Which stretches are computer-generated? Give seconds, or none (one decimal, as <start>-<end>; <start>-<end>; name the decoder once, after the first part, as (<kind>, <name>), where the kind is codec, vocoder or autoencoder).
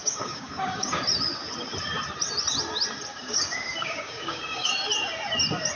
0.0-1.0 (codec, DAC); 3.1-4.7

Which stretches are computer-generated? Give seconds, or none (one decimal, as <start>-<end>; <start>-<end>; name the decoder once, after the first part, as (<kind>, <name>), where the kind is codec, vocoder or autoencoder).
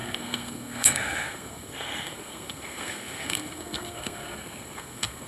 0.0-5.3 (codec, SNAC)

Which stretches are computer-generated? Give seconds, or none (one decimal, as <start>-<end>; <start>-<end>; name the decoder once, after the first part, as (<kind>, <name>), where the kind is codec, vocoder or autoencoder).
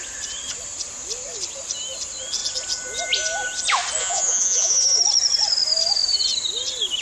4.0-5.0 (vocoder, Vocos)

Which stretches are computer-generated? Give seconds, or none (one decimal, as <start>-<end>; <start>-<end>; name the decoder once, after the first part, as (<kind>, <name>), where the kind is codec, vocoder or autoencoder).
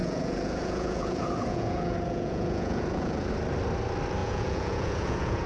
0.0-3.3 (vocoder, Vocos); 4.2-5.5